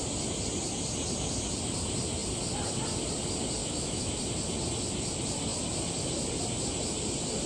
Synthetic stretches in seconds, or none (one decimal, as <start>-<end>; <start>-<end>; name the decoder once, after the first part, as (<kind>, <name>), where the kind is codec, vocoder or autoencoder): 3.6-4.2 (autoencoder, DAC-VAE)